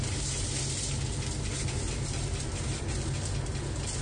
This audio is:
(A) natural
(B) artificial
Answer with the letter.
A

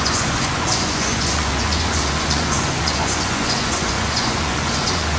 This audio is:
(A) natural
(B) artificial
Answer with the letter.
B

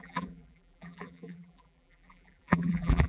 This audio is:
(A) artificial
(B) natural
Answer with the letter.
A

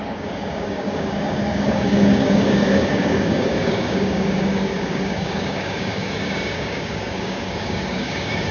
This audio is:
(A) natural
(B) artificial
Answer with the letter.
B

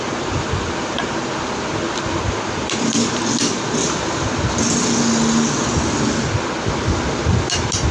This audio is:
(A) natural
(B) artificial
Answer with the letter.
A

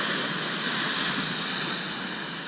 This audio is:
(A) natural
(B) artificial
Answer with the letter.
A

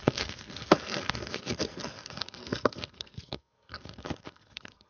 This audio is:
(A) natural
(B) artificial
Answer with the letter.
B